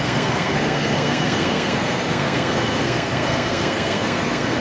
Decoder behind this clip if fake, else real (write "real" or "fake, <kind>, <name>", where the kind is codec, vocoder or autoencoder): fake, codec, SNAC